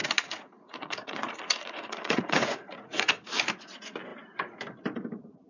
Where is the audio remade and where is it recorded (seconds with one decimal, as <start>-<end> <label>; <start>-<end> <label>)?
0.0-3.3 remade; 3.3-5.5 recorded